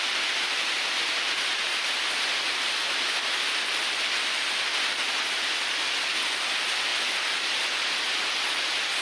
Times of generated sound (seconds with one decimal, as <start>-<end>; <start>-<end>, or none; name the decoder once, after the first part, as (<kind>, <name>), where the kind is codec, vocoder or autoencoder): none